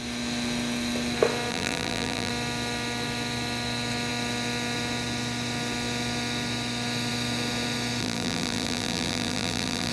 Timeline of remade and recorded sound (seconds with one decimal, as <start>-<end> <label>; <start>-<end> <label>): 0.0-1.5 recorded; 1.5-2.3 remade; 2.3-8.0 recorded; 8.0-9.9 remade